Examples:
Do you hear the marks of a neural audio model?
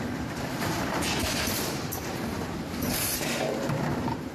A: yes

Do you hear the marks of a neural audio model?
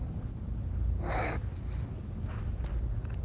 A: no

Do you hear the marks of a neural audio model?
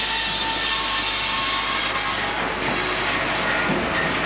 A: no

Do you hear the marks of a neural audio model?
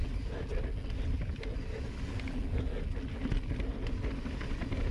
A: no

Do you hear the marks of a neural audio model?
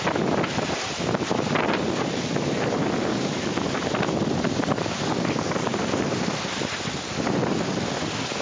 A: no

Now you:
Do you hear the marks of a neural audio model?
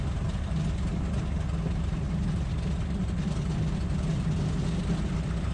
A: no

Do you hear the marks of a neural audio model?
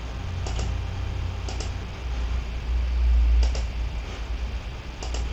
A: no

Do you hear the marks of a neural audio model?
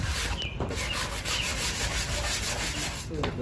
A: no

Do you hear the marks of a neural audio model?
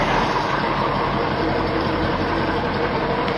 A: yes